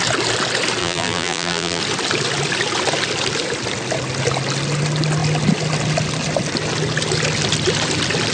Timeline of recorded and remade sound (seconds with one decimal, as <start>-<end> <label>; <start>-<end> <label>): 0.0-0.8 recorded; 0.8-1.8 remade; 1.8-8.3 recorded